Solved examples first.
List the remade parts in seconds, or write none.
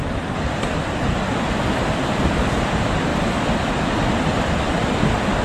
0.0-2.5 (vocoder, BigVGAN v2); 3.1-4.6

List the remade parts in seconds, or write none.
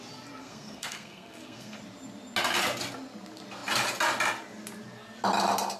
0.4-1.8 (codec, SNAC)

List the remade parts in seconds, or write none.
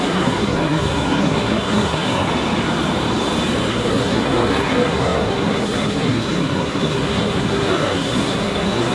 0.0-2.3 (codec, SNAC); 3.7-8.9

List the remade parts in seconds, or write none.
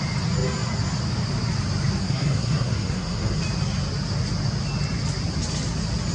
2.0-3.4 (codec, SNAC)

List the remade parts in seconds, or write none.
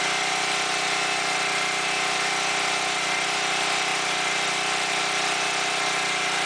none